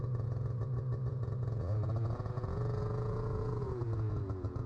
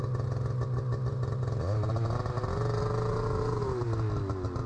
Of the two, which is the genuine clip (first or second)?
second